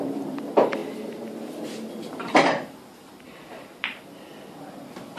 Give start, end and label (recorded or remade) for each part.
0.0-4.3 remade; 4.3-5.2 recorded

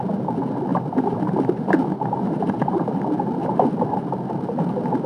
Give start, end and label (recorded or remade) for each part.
0.0-0.7 recorded; 0.7-2.9 remade; 2.9-5.1 recorded

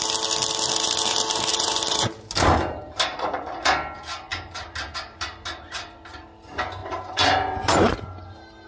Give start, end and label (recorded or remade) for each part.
0.0-1.5 recorded; 1.5-3.7 remade; 3.7-4.3 recorded; 4.3-6.2 remade; 6.2-6.8 recorded; 6.8-7.9 remade; 7.9-8.7 recorded

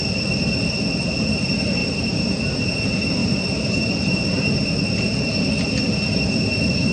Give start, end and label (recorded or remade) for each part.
0.0-1.8 recorded; 1.8-2.6 remade; 2.6-3.2 recorded; 3.2-4.7 remade; 4.7-6.9 recorded

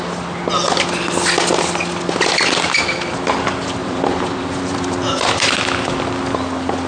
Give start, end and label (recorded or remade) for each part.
0.0-3.8 recorded; 3.8-5.3 remade; 5.3-6.9 recorded

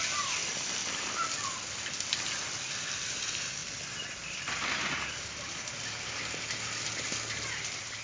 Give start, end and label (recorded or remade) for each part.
0.0-0.8 remade; 0.8-1.7 recorded; 1.7-3.6 remade; 3.6-7.0 recorded; 7.0-8.0 remade